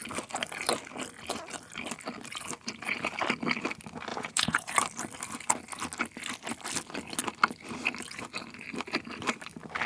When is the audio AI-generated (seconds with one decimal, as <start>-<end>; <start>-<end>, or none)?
4.1-4.7